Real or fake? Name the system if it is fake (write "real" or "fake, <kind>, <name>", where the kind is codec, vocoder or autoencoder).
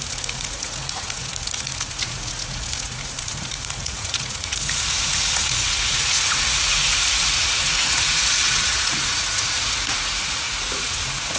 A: fake, vocoder, Vocos